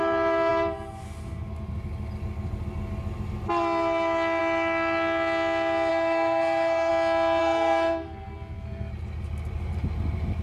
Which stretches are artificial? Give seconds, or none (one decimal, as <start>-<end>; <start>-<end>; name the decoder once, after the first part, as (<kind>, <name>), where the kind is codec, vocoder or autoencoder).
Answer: 5.9-6.9 (codec, SNAC); 7.4-8.9